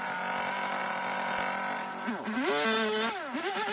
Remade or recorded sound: recorded